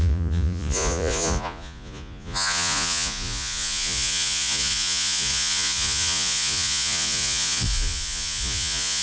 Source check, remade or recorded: remade